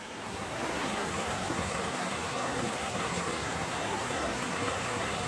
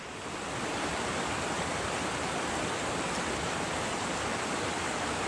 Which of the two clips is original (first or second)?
second